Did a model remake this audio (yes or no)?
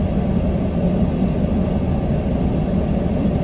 no